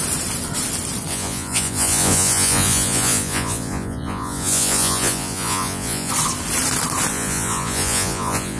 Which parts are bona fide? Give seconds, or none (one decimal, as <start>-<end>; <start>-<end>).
0.0-1.1; 6.1-7.1